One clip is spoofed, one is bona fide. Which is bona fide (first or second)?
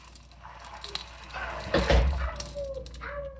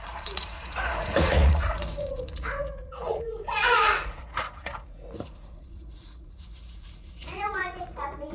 first